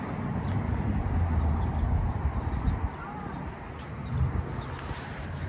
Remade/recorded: recorded